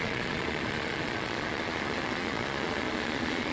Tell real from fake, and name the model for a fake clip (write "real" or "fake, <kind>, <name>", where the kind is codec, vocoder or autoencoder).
fake, vocoder, Vocos